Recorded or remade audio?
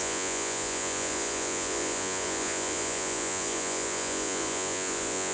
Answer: remade